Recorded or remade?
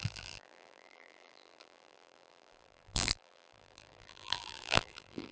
remade